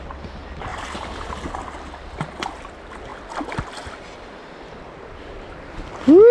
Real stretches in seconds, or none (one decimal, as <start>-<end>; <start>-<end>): 0.0-0.7; 1.5-6.3